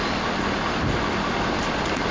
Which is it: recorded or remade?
recorded